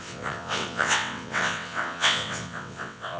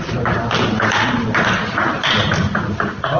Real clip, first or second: second